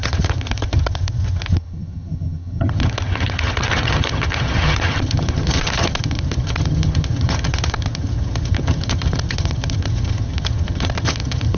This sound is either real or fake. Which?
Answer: fake